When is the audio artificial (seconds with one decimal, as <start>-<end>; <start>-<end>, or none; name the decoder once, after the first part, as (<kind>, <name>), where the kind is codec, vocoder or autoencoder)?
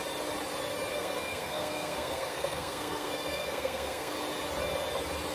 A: 0.9-4.1 (codec, SNAC)